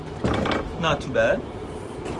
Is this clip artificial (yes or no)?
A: no